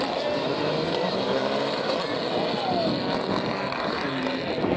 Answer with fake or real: real